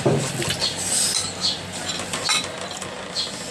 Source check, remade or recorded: recorded